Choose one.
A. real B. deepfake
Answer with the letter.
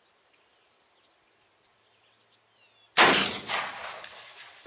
A